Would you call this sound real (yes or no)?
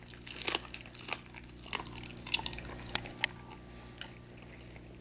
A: yes